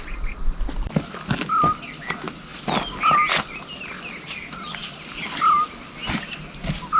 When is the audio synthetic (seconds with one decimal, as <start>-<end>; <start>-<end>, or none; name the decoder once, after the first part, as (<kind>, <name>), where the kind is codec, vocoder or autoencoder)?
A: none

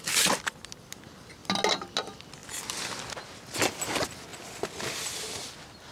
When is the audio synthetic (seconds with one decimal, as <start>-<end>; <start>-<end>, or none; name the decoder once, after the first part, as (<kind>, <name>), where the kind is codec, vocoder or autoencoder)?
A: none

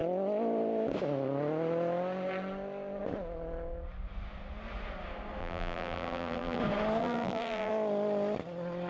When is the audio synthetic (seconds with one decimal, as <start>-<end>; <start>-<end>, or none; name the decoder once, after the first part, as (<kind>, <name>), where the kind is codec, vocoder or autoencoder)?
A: 5.4-6.6 (vocoder, BigVGAN v2); 7.0-7.7

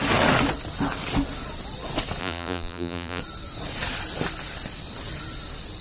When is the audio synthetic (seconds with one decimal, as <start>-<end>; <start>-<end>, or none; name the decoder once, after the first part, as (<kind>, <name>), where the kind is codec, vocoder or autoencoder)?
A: 2.2-3.2 (vocoder, BigVGAN v2)

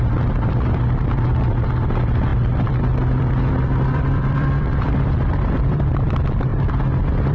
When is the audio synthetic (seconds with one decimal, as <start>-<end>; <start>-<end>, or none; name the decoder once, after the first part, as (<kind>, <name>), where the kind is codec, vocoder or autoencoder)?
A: 0.0-6.5 (vocoder, BigVGAN v2)

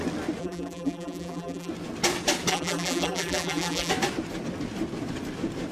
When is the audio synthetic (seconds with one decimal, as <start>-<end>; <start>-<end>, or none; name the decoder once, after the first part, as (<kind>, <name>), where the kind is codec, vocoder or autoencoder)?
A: 0.4-1.7 (vocoder, BigVGAN v2); 2.5-3.9

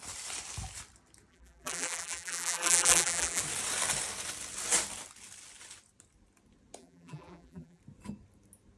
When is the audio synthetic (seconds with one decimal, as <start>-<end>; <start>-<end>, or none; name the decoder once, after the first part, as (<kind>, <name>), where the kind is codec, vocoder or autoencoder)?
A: 1.3-3.4 (vocoder, BigVGAN v2); 6.8-7.8

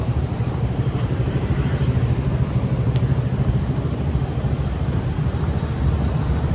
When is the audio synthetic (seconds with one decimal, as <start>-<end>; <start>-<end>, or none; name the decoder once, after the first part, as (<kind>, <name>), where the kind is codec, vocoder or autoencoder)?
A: 0.0-1.8 (vocoder, BigVGAN v2); 3.5-4.3; 4.9-6.5